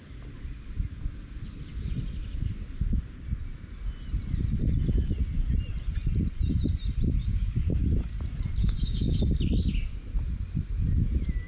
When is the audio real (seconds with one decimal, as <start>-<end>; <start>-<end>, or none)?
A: 0.0-7.2; 7.8-8.6; 9.2-11.5